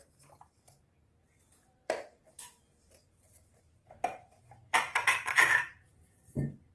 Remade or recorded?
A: remade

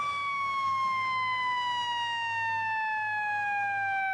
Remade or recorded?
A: recorded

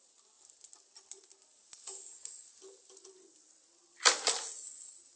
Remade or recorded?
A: recorded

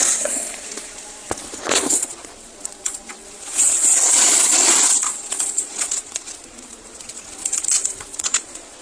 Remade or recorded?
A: remade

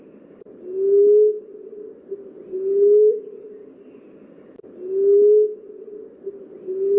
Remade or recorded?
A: recorded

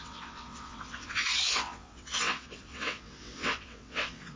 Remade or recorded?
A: remade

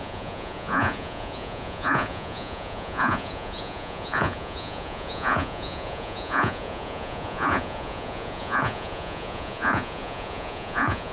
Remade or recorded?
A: remade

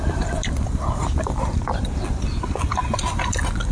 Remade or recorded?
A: recorded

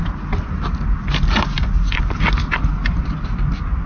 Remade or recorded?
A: recorded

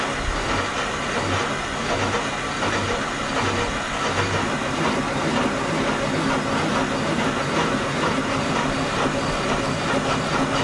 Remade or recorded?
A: recorded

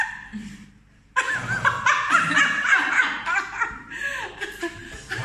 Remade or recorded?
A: remade